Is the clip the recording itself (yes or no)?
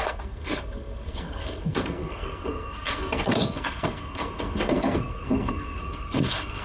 no